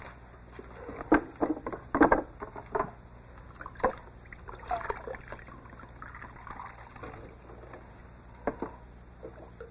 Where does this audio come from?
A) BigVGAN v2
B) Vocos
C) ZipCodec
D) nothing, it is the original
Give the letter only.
D